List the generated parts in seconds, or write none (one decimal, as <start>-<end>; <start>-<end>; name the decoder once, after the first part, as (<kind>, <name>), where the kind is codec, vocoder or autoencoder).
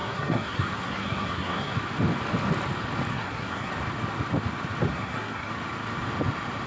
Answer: 0.0-1.8 (codec, SNAC); 3.1-3.7; 4.9-5.5